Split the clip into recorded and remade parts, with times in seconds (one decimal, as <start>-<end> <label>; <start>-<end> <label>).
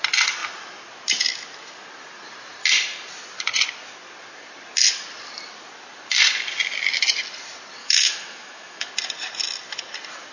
0.0-7.8 recorded; 7.8-8.9 remade; 8.9-10.3 recorded